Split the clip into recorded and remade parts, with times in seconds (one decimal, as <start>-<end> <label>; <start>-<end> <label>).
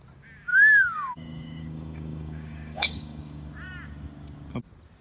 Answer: 0.0-0.5 recorded; 0.5-3.5 remade; 3.5-5.0 recorded